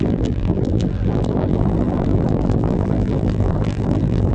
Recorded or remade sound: remade